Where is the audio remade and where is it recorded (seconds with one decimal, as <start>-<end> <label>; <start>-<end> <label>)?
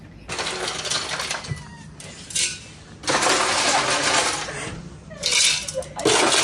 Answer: 0.0-6.4 recorded